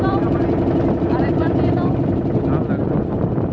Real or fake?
real